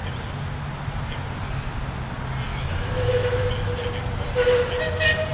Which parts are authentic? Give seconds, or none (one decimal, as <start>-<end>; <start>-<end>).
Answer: 0.0-2.5; 3.5-5.3

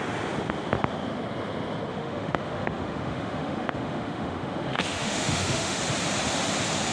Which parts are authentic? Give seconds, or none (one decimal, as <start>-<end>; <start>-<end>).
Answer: 0.0-1.9; 5.8-6.9

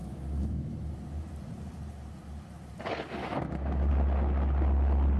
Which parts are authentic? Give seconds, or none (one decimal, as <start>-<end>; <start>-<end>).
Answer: 0.9-3.2; 3.9-5.2

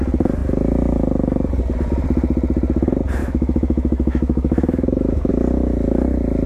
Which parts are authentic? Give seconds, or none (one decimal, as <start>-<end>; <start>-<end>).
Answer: 0.0-3.2; 5.3-6.5

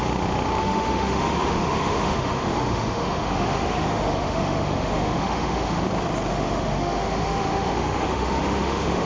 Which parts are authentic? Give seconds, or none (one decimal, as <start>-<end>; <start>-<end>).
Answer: 0.0-0.6; 5.8-6.3

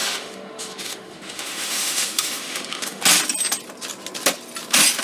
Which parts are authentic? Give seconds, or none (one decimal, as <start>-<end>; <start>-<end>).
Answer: 3.0-5.0

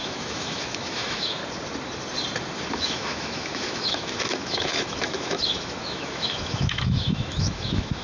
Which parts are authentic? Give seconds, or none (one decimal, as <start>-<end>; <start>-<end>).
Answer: 1.4-2.7